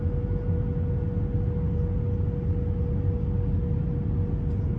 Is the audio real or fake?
real